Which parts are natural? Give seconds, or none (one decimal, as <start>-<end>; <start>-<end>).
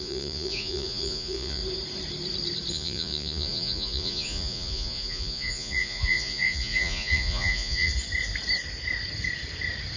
1.6-2.7; 7.9-10.0